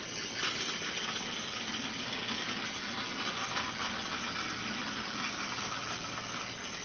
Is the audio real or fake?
real